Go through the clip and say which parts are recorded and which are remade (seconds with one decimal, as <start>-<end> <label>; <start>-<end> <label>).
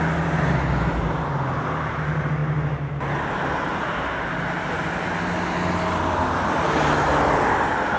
0.0-8.0 recorded